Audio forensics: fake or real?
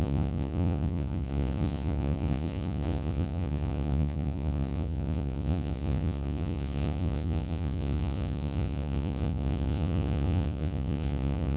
fake